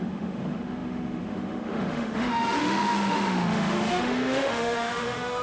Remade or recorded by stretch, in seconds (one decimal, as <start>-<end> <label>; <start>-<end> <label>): 0.0-5.4 remade